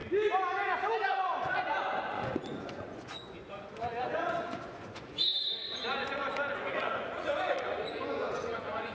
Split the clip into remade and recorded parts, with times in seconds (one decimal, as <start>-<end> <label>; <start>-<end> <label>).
0.0-0.9 recorded; 0.9-8.9 remade